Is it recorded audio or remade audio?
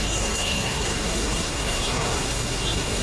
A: remade